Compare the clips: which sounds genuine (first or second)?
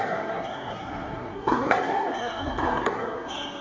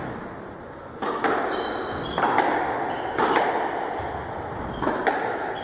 second